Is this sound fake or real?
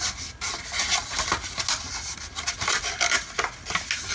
real